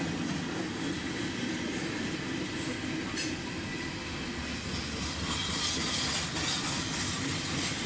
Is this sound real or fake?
real